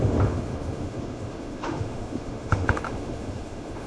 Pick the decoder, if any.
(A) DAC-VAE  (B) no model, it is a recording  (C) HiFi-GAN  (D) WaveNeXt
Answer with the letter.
A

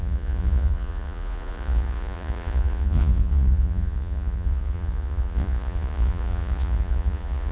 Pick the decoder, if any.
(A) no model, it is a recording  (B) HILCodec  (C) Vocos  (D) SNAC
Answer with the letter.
C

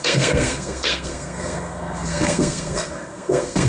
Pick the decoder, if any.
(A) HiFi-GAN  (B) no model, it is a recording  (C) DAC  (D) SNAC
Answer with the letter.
D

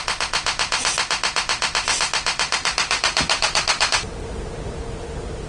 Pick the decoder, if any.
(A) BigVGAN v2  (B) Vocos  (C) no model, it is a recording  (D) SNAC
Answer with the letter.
C